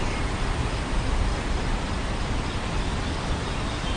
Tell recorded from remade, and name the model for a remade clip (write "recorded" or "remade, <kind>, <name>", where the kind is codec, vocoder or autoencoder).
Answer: recorded